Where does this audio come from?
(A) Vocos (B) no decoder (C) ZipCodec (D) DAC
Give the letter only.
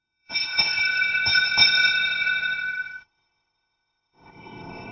C